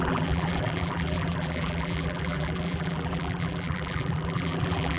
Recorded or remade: remade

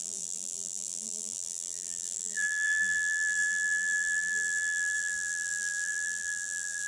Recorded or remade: remade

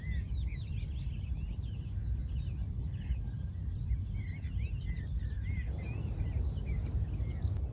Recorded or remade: recorded